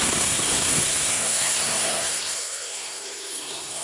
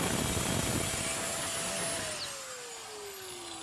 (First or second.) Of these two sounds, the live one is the second